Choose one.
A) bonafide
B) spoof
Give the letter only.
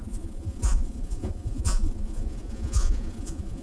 B